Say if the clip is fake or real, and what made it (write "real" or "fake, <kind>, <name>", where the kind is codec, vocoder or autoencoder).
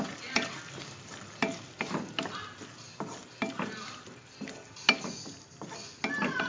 real